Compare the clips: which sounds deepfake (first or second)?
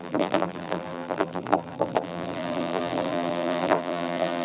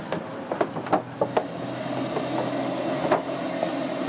first